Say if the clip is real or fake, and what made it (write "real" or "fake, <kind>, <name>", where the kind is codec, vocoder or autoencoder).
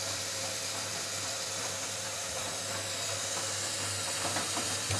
fake, vocoder, BigVGAN v2